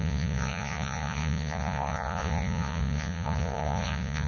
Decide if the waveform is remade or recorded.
remade